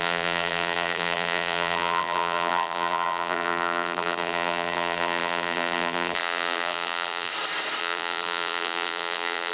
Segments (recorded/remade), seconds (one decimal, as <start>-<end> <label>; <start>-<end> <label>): 0.0-7.3 remade; 7.3-7.8 recorded; 7.8-9.5 remade